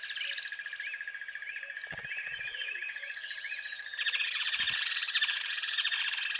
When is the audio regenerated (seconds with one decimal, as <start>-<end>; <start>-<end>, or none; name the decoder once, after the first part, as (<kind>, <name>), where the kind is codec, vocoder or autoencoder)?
2.2-6.0 (vocoder, Vocos)